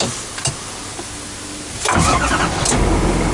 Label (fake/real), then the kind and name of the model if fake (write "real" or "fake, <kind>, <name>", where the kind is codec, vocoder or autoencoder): real